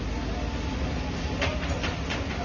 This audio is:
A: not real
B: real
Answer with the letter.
B